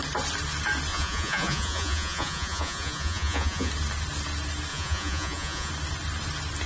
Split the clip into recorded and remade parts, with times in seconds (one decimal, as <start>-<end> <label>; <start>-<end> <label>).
0.0-0.9 recorded; 0.9-3.7 remade; 3.7-4.7 recorded; 4.7-5.7 remade; 5.7-6.7 recorded